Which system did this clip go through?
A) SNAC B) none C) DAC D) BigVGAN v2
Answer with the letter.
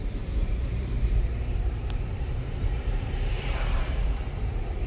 D